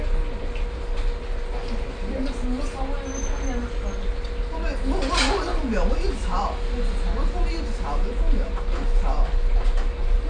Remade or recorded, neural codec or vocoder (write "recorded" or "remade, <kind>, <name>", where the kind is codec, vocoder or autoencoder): recorded